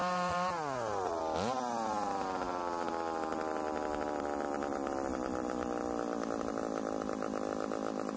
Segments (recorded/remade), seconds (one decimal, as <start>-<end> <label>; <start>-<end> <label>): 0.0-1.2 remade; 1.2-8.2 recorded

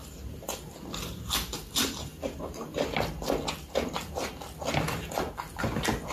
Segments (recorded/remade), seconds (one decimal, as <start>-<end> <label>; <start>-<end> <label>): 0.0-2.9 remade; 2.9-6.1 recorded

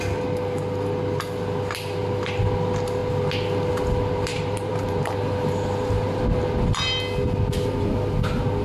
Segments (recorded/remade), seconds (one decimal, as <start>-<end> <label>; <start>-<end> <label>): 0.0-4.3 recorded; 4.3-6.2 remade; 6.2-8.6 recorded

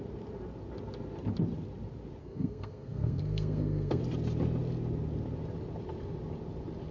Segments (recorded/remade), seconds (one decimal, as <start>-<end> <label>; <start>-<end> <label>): 0.0-2.2 recorded; 2.2-4.0 remade; 4.0-6.9 recorded

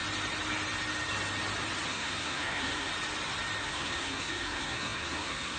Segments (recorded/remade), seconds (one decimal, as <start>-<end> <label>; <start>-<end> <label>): 0.0-1.9 recorded; 1.9-2.9 remade; 2.9-3.6 recorded; 3.6-5.6 remade

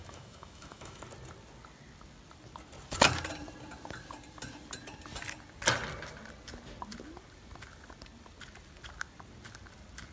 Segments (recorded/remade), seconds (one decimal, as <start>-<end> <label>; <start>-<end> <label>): 0.0-1.0 remade; 1.0-10.1 recorded